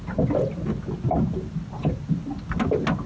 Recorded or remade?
recorded